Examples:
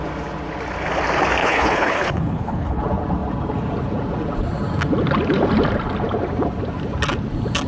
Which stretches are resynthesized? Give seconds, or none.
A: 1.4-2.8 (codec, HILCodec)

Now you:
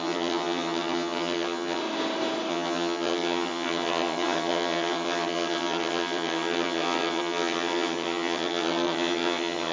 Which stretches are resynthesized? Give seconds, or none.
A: 0.0-1.8 (vocoder, HiFi-GAN); 2.5-9.7

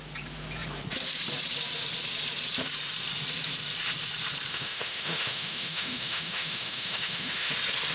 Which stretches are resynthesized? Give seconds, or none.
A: 4.5-7.5 (autoencoder, DAC-VAE)

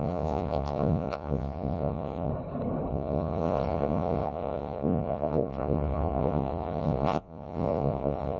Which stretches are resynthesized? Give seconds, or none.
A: 0.0-2.3 (vocoder, Vocos); 2.9-8.4